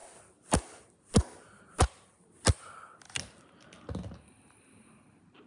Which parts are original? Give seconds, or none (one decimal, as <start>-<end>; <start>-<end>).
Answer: 0.0-5.5